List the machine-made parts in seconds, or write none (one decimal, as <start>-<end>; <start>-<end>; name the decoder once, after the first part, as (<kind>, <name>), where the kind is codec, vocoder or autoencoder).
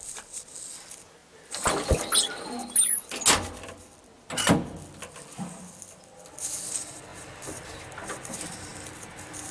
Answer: none